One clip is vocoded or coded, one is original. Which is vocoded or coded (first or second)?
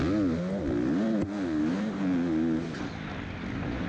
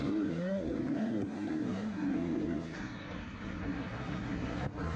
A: second